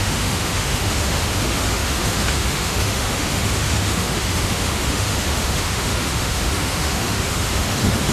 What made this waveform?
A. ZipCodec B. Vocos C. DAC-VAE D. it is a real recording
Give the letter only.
C